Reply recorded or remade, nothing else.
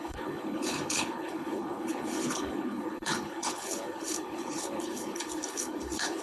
remade